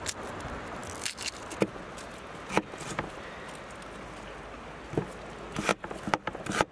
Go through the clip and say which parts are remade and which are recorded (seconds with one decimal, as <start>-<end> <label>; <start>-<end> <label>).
0.0-6.7 recorded